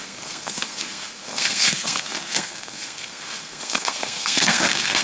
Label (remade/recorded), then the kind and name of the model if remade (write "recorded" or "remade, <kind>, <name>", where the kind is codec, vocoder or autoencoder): remade, codec, SNAC